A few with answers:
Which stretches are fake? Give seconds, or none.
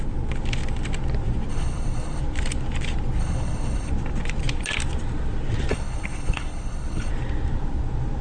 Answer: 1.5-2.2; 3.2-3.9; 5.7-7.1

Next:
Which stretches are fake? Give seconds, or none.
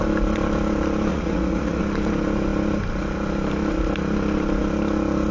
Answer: 1.1-1.8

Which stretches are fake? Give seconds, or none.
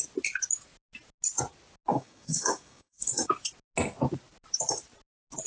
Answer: 1.9-3.3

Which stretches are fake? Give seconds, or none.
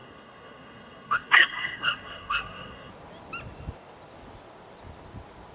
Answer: 0.0-2.9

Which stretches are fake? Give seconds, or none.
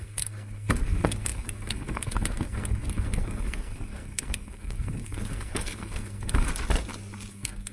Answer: 0.0-6.5; 7.3-7.7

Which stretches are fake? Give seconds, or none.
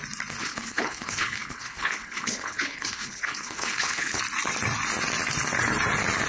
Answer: 0.4-4.2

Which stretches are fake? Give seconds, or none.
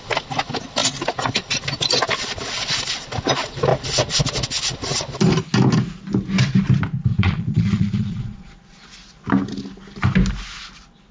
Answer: 7.1-8.6